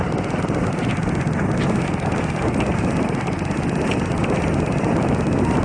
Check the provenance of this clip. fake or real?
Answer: real